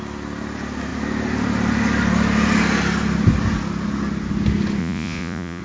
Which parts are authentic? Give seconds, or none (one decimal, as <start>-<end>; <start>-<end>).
0.0-4.8